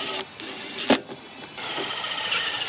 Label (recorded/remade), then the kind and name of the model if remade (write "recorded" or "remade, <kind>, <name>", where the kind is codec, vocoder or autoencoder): recorded